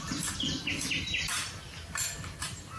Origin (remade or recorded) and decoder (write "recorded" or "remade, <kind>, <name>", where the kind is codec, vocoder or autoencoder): recorded